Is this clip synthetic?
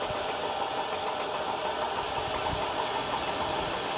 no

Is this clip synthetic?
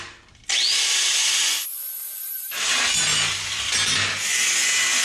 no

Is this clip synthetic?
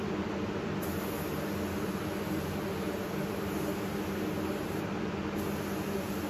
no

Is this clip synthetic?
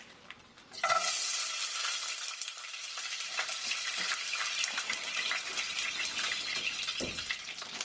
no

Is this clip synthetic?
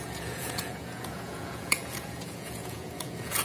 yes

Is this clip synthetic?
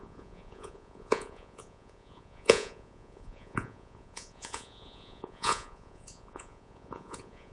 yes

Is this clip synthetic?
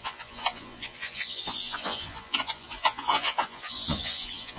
yes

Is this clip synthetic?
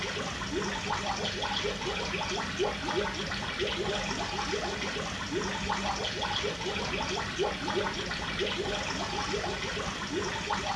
no